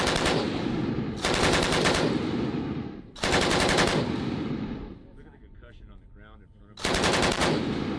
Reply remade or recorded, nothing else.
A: recorded